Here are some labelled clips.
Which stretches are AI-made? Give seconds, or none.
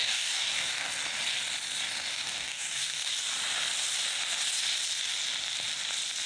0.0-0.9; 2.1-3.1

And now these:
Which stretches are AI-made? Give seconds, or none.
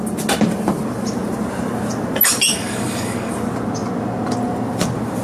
2.5-3.3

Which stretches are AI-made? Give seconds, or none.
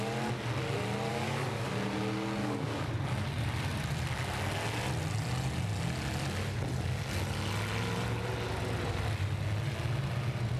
1.1-1.7; 2.4-2.9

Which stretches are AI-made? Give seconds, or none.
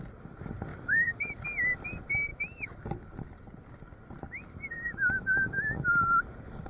0.7-1.3